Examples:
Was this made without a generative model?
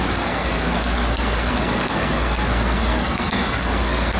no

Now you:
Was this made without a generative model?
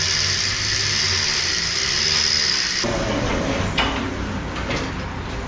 yes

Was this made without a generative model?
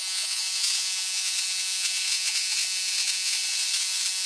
no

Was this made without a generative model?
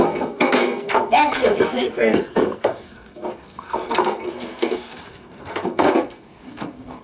no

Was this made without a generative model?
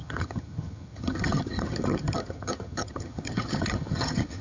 no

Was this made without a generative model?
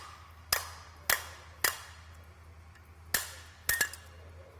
yes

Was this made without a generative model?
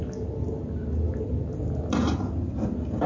yes